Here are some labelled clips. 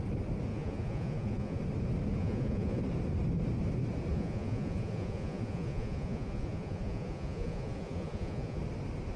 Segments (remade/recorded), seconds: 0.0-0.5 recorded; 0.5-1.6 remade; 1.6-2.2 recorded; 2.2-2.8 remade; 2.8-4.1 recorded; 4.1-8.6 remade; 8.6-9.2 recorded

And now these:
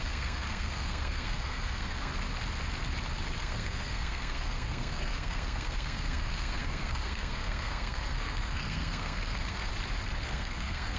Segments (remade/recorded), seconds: 0.0-2.1 remade; 2.1-3.4 recorded; 3.4-9.7 remade; 9.7-10.2 recorded; 10.2-11.0 remade

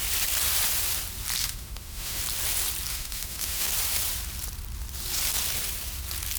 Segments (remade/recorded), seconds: 0.0-1.4 recorded; 1.4-2.2 remade; 2.2-2.9 recorded; 2.9-3.7 remade; 3.7-6.4 recorded

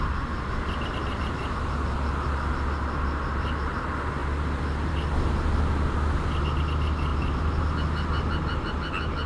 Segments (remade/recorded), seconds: 0.0-7.1 recorded; 7.1-7.6 remade; 7.6-9.3 recorded

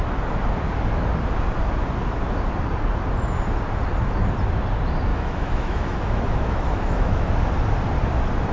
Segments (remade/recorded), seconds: 0.0-5.1 recorded; 5.1-7.3 remade; 7.3-8.5 recorded

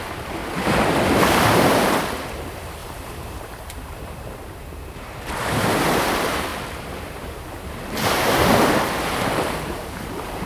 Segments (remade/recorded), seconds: 0.0-0.4 remade; 0.4-1.2 recorded; 1.2-2.8 remade; 2.8-3.3 recorded; 3.3-6.5 remade; 6.5-8.8 recorded; 8.8-10.5 remade